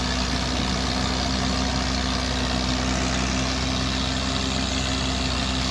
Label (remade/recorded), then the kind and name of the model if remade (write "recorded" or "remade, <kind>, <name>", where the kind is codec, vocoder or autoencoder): recorded